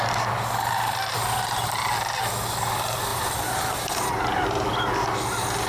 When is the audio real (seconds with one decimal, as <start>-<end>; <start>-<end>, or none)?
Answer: 0.0-3.1; 4.7-5.7